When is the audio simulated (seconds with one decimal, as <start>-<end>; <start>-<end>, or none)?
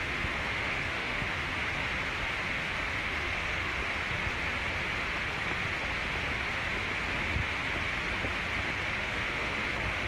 0.0-1.5; 2.9-3.8; 9.0-10.1